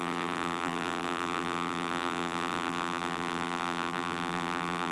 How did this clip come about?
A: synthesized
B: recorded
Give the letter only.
A